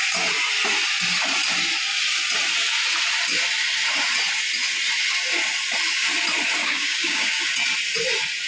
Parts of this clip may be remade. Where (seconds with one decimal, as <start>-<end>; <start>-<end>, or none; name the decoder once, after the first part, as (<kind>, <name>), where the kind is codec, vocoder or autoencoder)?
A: 6.6-7.4 (codec, DAC)